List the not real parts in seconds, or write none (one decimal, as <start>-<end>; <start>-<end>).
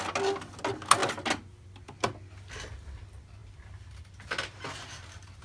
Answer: none